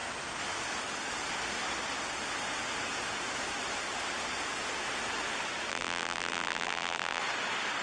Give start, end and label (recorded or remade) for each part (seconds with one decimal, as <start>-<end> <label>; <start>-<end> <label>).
0.0-5.7 recorded; 5.7-7.2 remade; 7.2-7.8 recorded